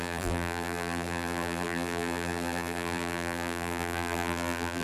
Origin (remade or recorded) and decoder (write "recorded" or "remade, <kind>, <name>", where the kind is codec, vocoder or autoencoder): remade, vocoder, BigVGAN v2